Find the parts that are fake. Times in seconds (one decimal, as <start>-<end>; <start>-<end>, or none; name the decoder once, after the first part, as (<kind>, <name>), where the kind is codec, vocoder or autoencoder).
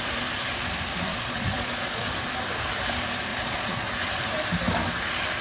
1.1-2.1 (vocoder, Vocos); 3.3-3.8